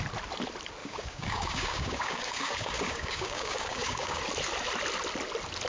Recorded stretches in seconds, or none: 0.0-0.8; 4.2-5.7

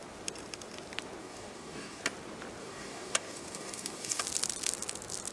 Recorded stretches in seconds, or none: 0.0-1.2; 2.0-2.6; 4.2-5.3

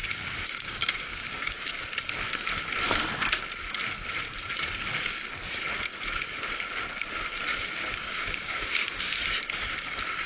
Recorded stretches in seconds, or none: 1.7-7.5; 9.2-10.3

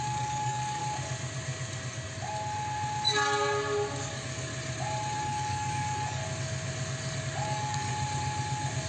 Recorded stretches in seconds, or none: 0.8-4.0; 4.5-5.2; 6.2-7.2; 7.9-8.9

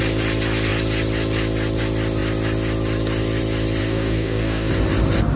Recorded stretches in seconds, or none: 0.0-3.8; 4.7-5.4